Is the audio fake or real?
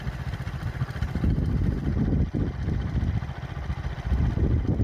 real